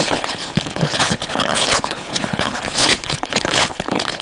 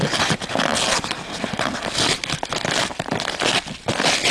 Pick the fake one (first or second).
first